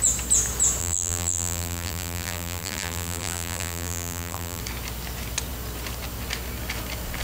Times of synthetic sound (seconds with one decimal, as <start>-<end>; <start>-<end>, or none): 0.8-4.6